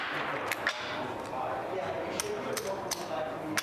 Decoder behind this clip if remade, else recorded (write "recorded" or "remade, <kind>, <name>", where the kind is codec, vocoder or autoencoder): recorded